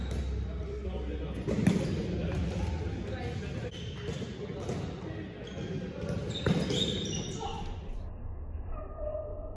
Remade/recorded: recorded